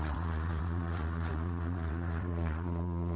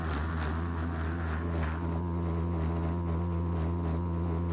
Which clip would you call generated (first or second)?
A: first